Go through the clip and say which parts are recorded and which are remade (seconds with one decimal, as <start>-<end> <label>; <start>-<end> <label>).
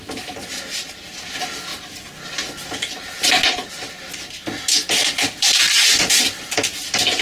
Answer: 0.0-7.2 recorded